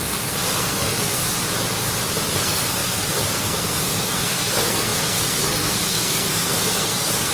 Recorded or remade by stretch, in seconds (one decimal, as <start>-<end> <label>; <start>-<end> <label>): 0.0-1.2 remade; 1.2-2.3 recorded; 2.3-7.3 remade